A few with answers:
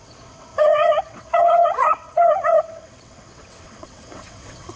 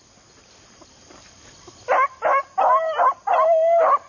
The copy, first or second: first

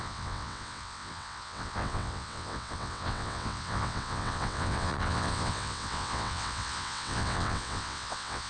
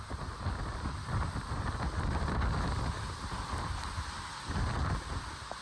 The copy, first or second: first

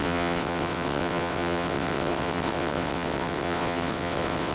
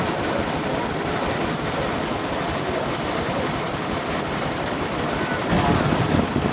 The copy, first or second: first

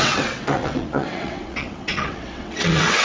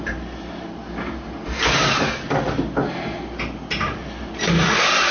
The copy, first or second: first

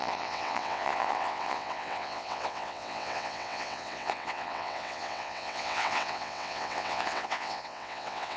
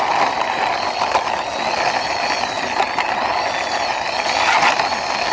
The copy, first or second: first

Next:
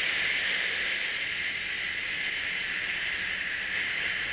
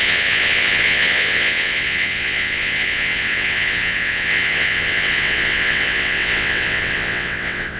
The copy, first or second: second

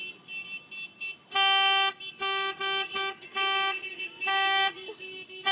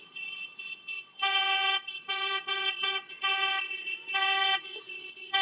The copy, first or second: second